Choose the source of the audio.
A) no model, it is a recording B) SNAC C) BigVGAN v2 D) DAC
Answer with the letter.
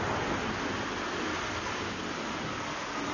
A